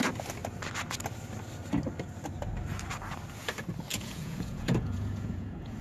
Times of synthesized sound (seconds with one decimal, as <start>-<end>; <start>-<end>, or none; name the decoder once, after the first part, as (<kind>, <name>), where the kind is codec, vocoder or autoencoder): 3.9-5.8 (vocoder, Vocos)